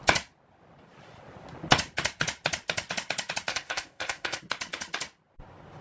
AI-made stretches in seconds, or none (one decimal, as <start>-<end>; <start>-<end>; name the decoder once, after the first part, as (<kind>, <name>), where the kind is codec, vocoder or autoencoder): 3.5-4.4 (codec, ZipCodec)